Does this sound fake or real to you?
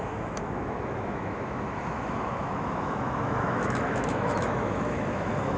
fake